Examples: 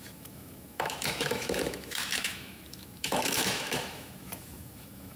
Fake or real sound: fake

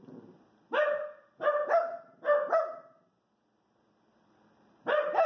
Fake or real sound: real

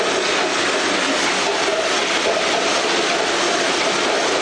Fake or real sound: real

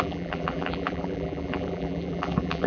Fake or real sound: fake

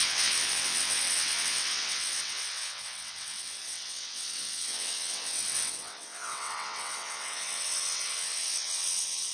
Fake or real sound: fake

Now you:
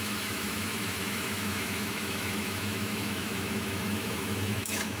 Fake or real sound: fake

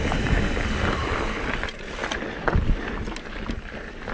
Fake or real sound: fake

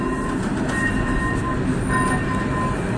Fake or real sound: real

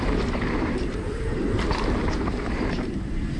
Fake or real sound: fake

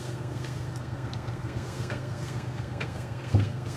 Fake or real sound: fake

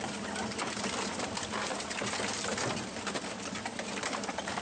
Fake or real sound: fake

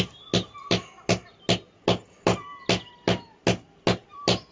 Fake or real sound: real